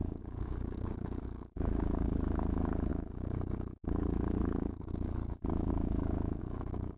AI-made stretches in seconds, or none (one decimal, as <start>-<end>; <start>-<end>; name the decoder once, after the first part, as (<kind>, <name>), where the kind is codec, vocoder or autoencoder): 0.0-7.0 (codec, DAC)